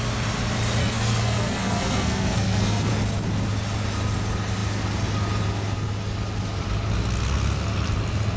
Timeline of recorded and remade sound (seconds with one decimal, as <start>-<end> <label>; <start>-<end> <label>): 0.0-0.8 recorded; 0.8-2.9 remade; 2.9-8.4 recorded